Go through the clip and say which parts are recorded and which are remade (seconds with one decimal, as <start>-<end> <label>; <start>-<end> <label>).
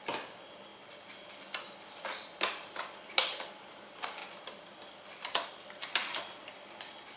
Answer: 0.0-7.2 recorded